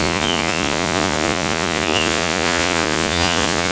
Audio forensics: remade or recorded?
remade